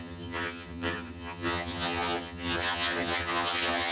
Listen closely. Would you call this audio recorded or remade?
remade